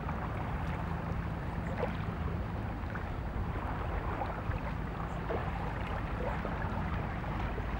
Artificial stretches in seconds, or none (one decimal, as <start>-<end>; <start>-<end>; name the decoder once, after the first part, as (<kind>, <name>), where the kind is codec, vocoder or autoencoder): 5.4-7.2 (vocoder, BigVGAN v2)